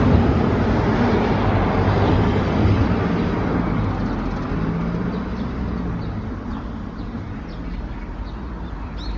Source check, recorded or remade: recorded